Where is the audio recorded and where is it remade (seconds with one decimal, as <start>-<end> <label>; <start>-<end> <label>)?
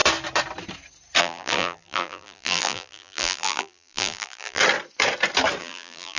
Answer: 0.0-1.2 recorded; 1.2-4.6 remade; 4.6-5.6 recorded; 5.6-6.2 remade